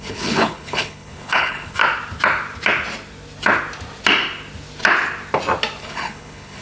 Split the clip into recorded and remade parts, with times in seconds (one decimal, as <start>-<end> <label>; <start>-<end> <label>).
0.0-1.8 remade; 1.8-5.8 recorded; 5.8-6.6 remade